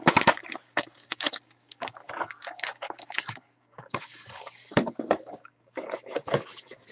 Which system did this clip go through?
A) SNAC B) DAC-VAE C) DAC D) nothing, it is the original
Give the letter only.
C